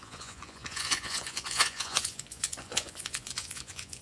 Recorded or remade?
remade